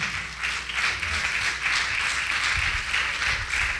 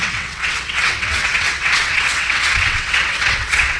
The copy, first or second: second